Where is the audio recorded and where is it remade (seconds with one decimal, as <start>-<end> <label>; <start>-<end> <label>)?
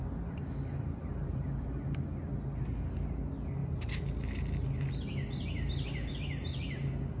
0.0-1.2 recorded; 1.2-1.8 remade; 1.8-7.2 recorded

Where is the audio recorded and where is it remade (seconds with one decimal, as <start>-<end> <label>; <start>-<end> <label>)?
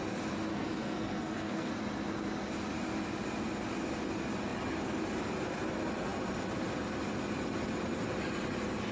0.0-0.5 recorded; 0.5-1.7 remade; 1.7-8.9 recorded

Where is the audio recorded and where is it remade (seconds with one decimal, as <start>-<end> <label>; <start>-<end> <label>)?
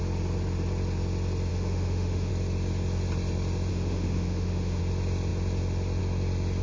0.0-1.5 recorded; 1.5-2.3 remade; 2.3-3.7 recorded; 3.7-4.8 remade; 4.8-6.6 recorded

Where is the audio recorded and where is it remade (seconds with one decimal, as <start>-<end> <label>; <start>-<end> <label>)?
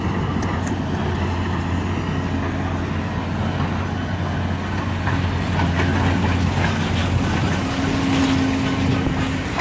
0.0-9.6 recorded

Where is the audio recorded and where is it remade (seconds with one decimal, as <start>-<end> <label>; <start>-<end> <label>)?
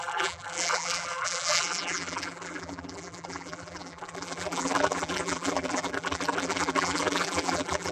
0.0-7.9 remade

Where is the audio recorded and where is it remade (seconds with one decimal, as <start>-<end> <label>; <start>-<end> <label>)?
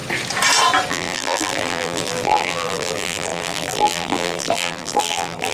0.0-0.9 recorded; 0.9-5.5 remade